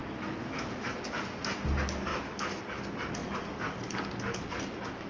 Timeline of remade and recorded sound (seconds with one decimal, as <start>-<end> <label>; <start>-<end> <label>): 0.0-1.0 remade; 1.0-2.1 recorded; 2.1-2.6 remade; 2.6-5.1 recorded